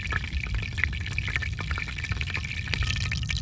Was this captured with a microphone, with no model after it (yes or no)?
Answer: yes